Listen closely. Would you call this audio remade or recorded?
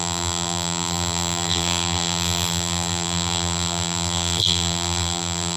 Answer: remade